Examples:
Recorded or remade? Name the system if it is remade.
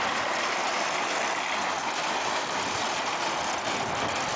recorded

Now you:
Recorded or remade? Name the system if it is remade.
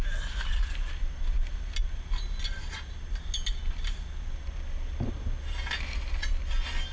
recorded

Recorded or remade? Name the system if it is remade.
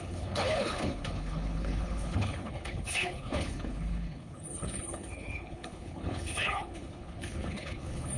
remade, codec, HILCodec